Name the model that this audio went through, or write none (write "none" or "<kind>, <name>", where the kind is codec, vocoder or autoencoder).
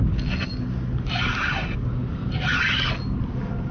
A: none